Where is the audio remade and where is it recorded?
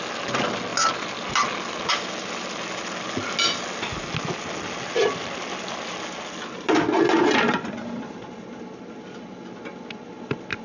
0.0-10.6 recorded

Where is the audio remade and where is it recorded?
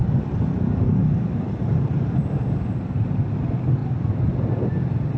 0.0-5.2 recorded